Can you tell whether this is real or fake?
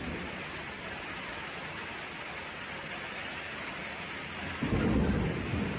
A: real